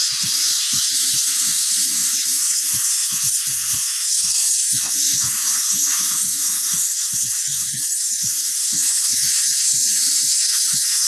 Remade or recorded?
remade